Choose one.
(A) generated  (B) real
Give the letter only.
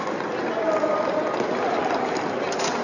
B